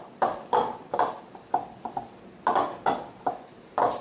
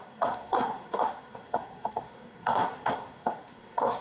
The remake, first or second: second